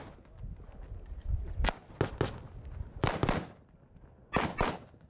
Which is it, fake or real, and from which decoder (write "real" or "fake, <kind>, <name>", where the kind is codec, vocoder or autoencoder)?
real